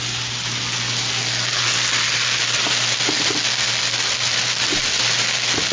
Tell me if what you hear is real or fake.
real